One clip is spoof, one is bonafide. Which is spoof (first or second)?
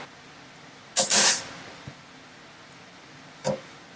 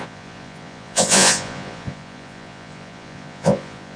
second